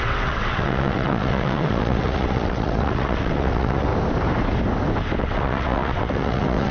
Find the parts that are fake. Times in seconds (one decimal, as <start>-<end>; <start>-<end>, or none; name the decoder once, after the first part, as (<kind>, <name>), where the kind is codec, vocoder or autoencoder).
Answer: 0.0-3.9 (vocoder, WaveNeXt); 5.2-6.7